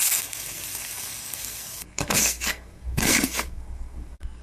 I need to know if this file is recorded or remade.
remade